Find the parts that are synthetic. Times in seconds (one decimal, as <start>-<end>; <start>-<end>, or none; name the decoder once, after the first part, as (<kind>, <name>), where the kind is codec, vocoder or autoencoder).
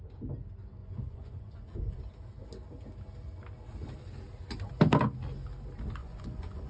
0.8-2.0 (vocoder, Vocos); 6.0-6.7